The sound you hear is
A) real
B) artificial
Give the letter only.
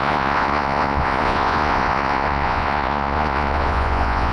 B